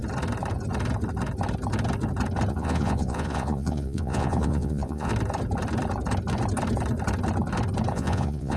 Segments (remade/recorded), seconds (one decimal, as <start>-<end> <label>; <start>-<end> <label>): 0.0-2.5 recorded; 2.5-5.1 remade; 5.1-7.9 recorded; 7.9-8.6 remade

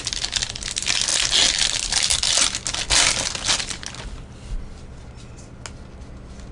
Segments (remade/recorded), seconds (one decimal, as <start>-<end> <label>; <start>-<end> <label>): 0.0-6.5 recorded

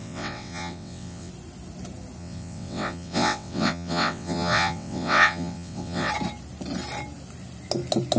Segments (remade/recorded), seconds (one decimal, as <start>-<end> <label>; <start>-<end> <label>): 0.0-1.3 remade; 1.3-2.2 recorded; 2.2-6.1 remade; 6.1-8.2 recorded

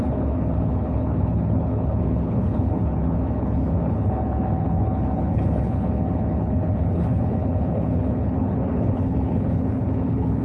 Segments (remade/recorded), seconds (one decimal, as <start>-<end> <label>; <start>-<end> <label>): 0.0-10.4 remade